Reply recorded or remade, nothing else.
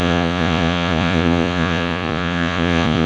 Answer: remade